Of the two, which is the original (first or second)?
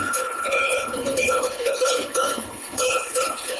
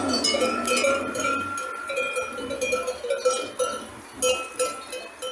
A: second